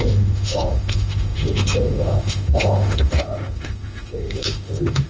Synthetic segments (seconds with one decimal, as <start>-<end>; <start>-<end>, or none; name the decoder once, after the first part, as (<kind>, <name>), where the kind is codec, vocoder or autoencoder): 0.0-5.1 (autoencoder, DAC-VAE)